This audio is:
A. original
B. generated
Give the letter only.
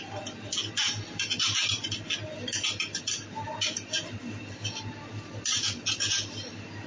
A